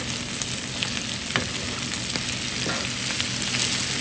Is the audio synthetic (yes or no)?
no